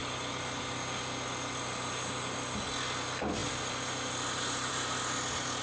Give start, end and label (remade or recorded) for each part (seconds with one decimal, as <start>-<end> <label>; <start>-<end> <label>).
0.0-5.6 recorded